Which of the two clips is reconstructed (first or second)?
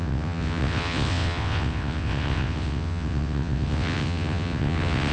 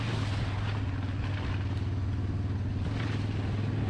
first